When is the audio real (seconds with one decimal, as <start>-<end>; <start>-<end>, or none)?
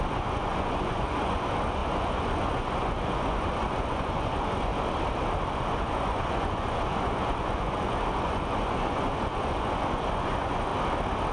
4.7-5.5; 10.7-11.3